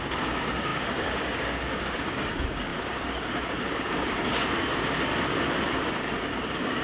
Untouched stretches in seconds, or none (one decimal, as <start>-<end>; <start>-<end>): 5.1-5.8